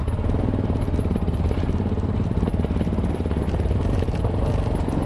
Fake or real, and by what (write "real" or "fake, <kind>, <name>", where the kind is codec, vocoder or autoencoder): real